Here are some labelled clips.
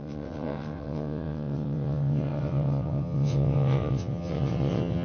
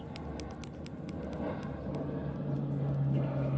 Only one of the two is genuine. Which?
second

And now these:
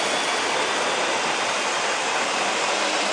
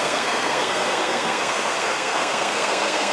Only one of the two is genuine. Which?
first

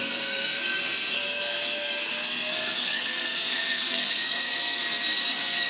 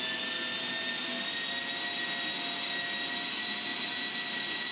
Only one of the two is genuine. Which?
second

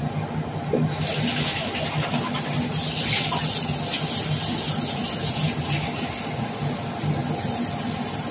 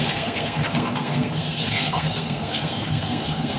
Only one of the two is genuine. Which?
first